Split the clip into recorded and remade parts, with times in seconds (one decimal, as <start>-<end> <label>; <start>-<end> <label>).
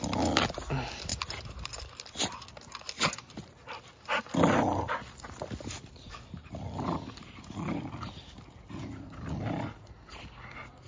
0.0-10.9 recorded